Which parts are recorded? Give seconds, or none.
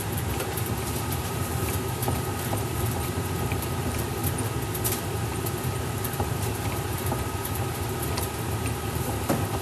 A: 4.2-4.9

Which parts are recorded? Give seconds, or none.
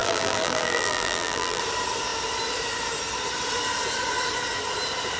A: 1.6-5.2